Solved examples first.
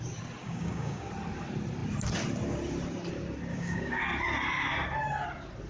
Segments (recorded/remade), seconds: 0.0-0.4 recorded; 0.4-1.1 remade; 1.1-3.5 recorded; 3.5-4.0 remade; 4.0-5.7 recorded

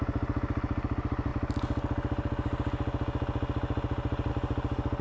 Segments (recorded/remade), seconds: 0.0-5.0 recorded

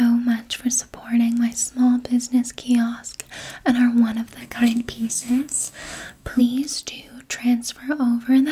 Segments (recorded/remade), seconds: 0.0-4.4 recorded; 4.4-6.4 remade; 6.4-8.5 recorded

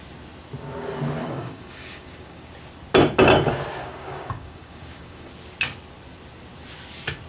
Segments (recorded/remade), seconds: 0.0-1.2 recorded; 1.2-2.5 remade; 2.5-3.8 recorded; 3.8-5.3 remade; 5.3-7.3 recorded

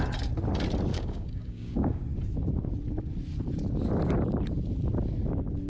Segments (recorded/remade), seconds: 0.0-0.9 recorded; 0.9-2.0 remade; 2.0-5.7 recorded